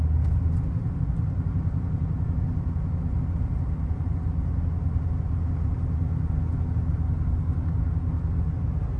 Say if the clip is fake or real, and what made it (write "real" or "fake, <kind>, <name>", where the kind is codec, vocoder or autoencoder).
real